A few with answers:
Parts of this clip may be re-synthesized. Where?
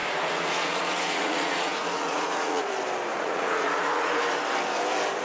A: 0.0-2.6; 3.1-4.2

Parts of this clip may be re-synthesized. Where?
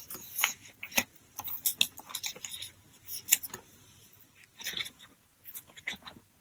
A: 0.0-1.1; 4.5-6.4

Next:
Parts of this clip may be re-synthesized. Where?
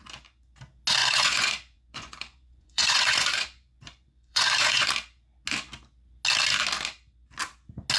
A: 1.0-4.9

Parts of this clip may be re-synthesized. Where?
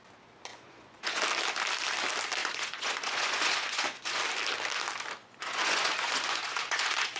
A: 0.5-1.2; 2.4-4.2; 5.2-7.2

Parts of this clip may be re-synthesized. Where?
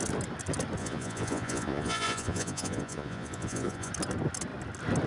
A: 0.8-3.9